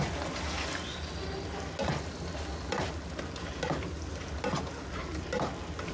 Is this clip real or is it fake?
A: real